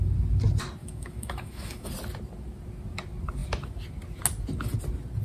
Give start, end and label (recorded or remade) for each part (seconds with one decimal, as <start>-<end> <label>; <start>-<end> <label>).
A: 0.0-0.8 recorded; 0.8-1.9 remade; 1.9-5.2 recorded